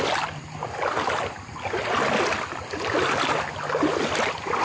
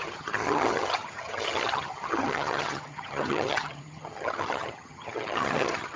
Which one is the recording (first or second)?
first